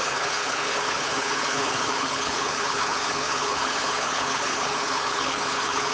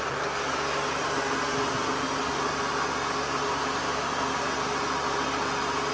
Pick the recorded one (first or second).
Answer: second